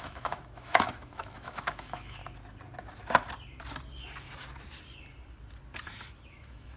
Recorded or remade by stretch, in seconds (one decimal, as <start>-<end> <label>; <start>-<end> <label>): 0.0-2.2 remade; 2.2-6.3 recorded; 6.3-6.8 remade